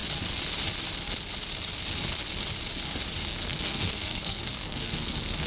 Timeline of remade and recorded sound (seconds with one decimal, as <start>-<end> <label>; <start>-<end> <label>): 0.0-3.3 recorded; 3.3-5.5 remade